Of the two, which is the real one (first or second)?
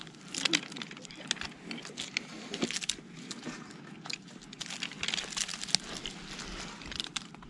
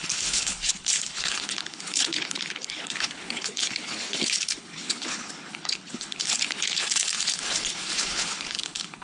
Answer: first